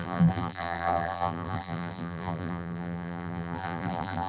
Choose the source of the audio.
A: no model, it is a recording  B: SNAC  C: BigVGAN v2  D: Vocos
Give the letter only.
C